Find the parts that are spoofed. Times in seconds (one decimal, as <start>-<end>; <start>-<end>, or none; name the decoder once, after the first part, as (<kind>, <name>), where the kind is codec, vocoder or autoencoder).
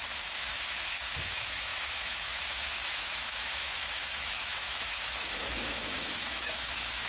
0.0-7.1 (autoencoder, DAC-VAE)